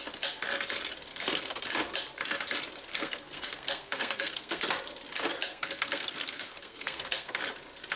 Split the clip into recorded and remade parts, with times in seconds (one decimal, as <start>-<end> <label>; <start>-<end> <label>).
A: 0.0-1.1 recorded; 1.1-1.6 remade; 1.6-2.9 recorded; 2.9-4.6 remade; 4.6-5.5 recorded; 5.5-7.4 remade; 7.4-8.0 recorded